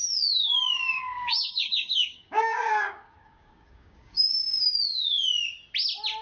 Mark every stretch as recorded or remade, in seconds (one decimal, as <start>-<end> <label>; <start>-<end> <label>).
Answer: 0.0-0.5 recorded; 0.5-4.2 remade; 4.2-6.2 recorded